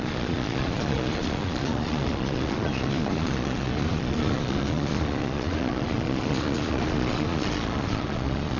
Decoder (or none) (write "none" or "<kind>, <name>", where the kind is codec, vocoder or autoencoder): vocoder, Vocos